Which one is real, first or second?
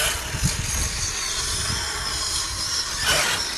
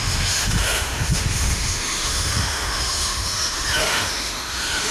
first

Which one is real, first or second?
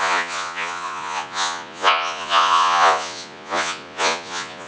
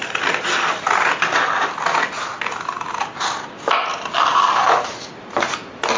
second